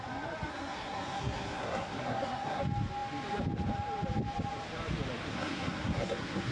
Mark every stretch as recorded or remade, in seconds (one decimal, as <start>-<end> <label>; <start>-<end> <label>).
0.0-0.5 recorded; 0.5-2.6 remade; 2.6-5.3 recorded; 5.3-6.5 remade